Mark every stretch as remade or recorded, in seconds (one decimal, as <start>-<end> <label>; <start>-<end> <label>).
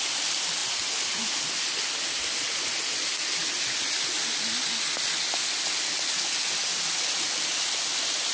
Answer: 0.0-8.3 recorded